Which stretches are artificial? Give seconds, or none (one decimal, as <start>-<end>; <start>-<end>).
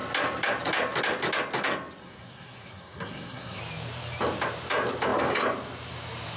2.0-3.6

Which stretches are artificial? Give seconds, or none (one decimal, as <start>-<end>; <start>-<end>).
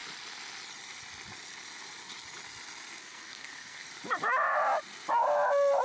3.0-3.9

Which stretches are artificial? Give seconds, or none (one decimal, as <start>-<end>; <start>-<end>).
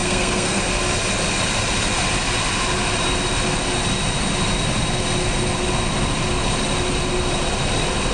0.0-0.6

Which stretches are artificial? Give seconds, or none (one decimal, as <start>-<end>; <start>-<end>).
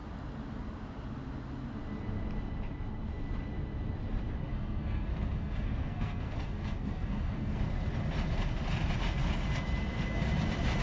4.5-7.6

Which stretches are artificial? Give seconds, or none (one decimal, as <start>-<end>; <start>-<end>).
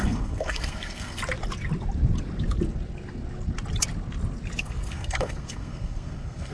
0.0-1.2; 4.6-6.5